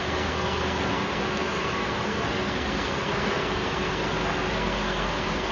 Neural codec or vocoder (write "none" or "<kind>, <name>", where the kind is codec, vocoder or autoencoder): codec, SNAC